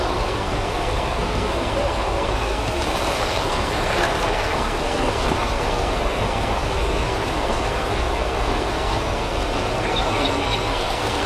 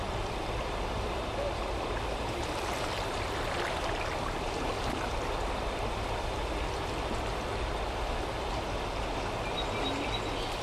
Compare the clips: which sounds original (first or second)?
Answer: second